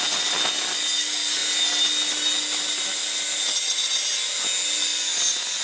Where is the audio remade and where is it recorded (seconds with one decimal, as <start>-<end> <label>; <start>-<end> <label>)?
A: 0.0-5.6 recorded